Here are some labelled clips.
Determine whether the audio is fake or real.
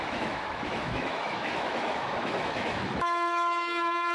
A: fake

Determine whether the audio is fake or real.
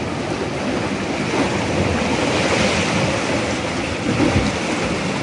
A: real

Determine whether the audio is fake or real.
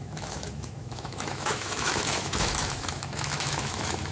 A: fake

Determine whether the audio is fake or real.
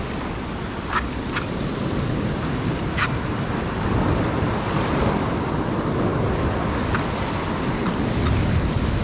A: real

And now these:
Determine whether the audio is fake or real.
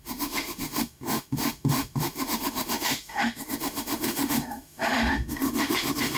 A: fake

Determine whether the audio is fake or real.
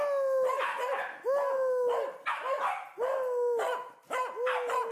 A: real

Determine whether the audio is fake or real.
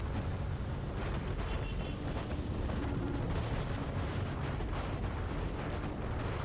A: real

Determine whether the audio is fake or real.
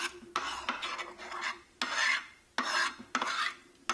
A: real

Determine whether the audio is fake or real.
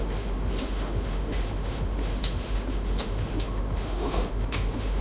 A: fake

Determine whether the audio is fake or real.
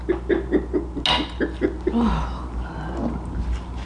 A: real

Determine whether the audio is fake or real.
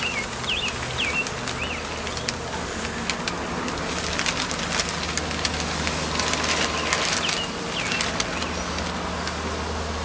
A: real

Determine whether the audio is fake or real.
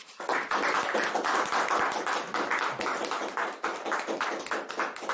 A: real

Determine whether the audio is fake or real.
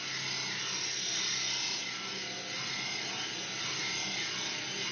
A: real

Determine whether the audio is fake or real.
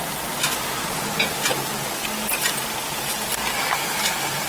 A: real